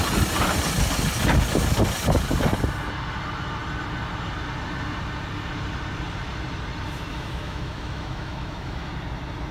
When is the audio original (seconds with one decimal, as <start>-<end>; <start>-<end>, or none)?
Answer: 0.0-7.1; 8.9-9.5

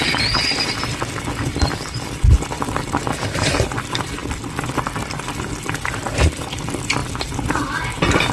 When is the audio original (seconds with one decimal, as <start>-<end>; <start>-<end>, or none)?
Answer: 4.2-4.7

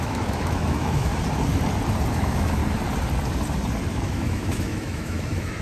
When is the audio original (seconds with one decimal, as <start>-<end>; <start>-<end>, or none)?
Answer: 1.1-2.1; 2.6-3.9

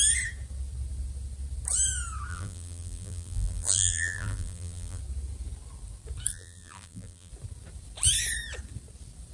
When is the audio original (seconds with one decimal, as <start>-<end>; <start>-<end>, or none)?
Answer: 0.0-2.3; 5.0-6.3; 7.3-9.3

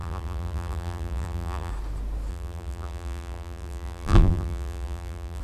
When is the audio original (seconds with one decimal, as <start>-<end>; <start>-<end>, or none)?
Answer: 1.7-2.3